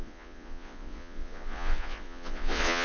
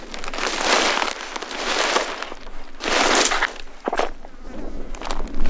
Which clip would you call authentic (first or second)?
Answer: second